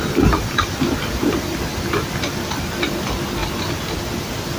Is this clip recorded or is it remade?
recorded